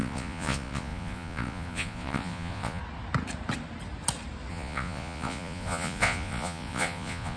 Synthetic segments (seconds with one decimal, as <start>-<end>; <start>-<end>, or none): 0.0-2.8; 4.5-7.4